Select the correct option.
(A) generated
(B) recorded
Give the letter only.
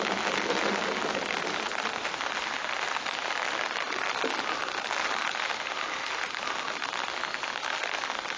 B